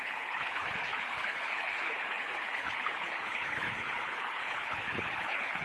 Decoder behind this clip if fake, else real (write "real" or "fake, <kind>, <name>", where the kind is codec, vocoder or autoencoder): fake, codec, HILCodec